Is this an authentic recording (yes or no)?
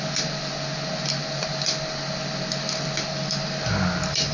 yes